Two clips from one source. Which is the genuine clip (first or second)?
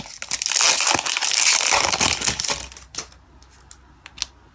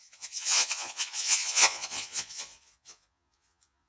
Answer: first